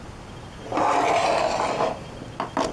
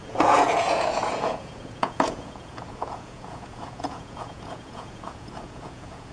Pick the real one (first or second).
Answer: first